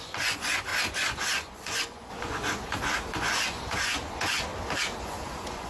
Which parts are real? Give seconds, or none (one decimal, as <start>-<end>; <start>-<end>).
4.5-5.0